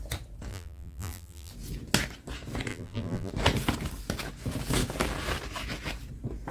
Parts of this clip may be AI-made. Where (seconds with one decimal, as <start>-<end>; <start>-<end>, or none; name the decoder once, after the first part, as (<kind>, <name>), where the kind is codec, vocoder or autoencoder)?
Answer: 0.5-1.5 (vocoder, BigVGAN v2); 2.7-3.3